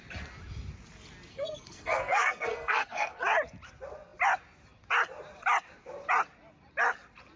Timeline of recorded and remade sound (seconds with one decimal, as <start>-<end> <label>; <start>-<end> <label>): 0.0-1.3 recorded; 1.3-3.2 remade; 3.2-7.4 recorded